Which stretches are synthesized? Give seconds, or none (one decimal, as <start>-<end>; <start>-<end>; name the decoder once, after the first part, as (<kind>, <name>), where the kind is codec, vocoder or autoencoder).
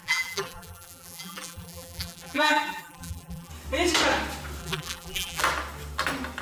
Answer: 0.0-3.5 (vocoder, BigVGAN v2); 4.6-5.4